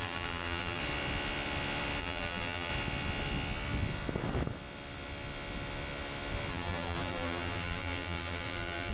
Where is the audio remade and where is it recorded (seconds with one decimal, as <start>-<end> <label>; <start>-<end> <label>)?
0.0-0.8 remade; 0.8-2.0 recorded; 2.0-2.7 remade; 2.7-6.5 recorded; 6.5-8.9 remade